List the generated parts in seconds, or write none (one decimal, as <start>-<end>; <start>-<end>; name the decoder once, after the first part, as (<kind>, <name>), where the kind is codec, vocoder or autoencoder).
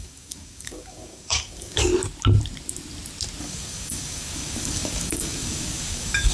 0.0-1.9 (codec, DAC); 3.4-6.3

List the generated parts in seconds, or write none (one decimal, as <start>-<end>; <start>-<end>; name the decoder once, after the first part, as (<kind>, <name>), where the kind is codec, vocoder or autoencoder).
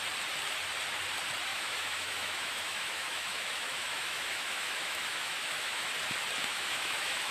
1.5-5.9 (autoencoder, DAC-VAE); 6.5-7.3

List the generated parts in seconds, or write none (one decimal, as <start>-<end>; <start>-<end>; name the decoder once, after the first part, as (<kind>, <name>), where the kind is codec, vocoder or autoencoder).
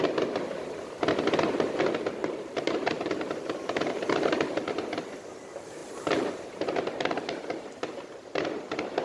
2.2-4.7 (vocoder, BigVGAN v2); 5.8-7.5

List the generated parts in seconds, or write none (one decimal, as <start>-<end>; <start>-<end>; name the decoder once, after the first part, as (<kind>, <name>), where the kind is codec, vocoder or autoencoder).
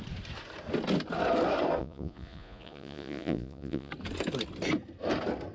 1.8-3.9 (vocoder, Vocos)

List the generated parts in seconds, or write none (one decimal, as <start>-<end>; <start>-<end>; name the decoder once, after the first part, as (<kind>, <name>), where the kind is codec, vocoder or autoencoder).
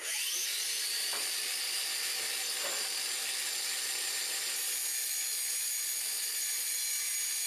none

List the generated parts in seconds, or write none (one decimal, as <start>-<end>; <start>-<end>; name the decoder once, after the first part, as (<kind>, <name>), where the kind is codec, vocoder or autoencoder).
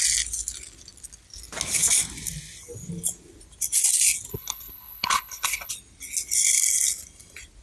4.3-5.7 (codec, HILCodec)